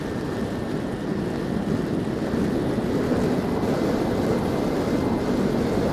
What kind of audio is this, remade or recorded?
recorded